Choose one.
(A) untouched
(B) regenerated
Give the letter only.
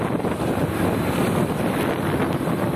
A